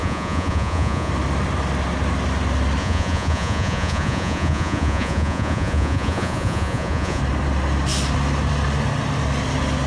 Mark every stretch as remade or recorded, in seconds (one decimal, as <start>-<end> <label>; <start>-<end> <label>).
0.0-1.1 remade; 1.1-2.8 recorded; 2.8-7.2 remade; 7.2-9.9 recorded

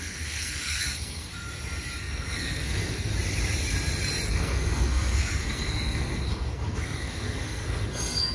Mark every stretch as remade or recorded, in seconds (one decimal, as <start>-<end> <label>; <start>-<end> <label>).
0.0-1.3 remade; 1.3-2.0 recorded; 2.0-3.1 remade; 3.1-4.3 recorded; 4.3-8.3 remade